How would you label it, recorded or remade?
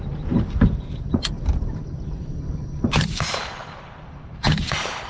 remade